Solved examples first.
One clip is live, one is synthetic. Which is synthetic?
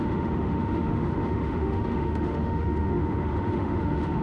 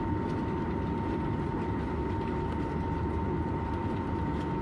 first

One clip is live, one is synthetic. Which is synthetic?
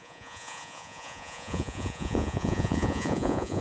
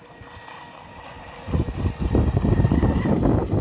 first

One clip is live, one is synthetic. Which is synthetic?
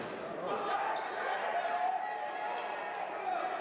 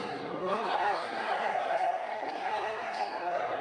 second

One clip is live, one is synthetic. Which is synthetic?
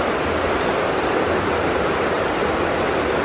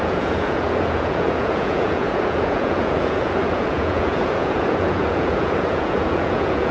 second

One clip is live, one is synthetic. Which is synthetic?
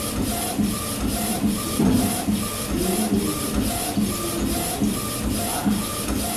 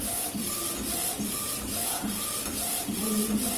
second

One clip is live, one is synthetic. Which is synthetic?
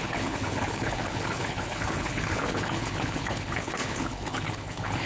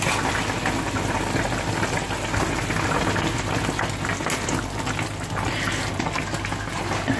first